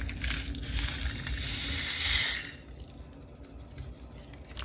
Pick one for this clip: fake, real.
real